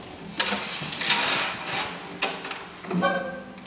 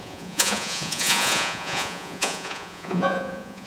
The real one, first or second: first